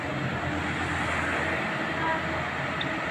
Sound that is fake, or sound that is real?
real